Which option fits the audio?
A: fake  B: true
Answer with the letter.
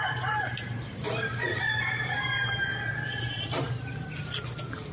A